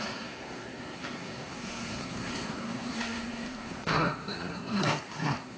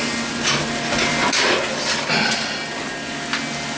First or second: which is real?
second